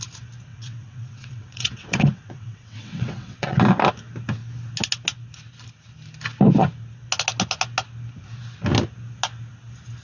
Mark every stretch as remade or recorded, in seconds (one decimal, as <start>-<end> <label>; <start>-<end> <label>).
0.0-0.5 recorded; 0.5-3.6 remade; 3.6-10.0 recorded